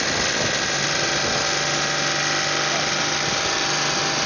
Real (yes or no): yes